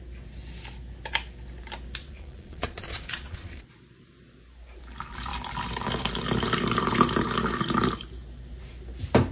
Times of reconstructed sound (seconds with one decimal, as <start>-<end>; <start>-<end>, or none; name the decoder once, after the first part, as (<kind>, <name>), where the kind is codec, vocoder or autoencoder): 2.0-3.7 (vocoder, Vocos)